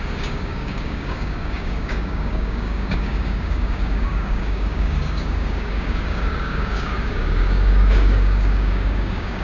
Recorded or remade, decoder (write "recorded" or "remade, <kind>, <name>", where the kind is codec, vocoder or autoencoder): remade, codec, DAC